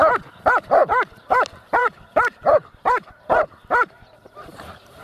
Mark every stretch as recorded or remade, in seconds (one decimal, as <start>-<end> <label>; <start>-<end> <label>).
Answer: 0.0-1.8 recorded; 1.8-5.0 remade